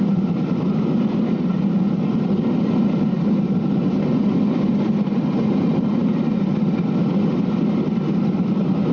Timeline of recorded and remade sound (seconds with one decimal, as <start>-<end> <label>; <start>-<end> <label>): 0.0-8.9 recorded